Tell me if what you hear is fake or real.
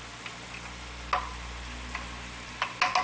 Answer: real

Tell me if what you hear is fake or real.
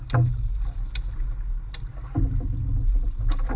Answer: real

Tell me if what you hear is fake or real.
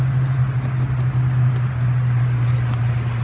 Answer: real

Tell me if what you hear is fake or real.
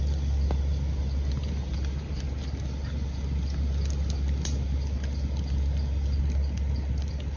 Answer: real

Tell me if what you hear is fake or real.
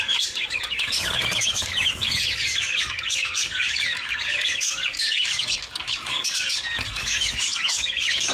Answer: fake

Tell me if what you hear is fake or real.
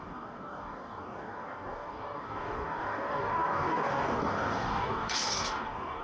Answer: fake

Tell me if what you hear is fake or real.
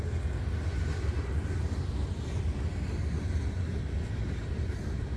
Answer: real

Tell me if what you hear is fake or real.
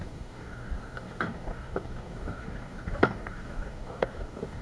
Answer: fake